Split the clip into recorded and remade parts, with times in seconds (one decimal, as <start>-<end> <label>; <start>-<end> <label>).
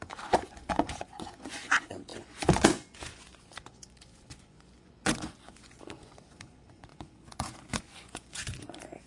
0.0-9.1 remade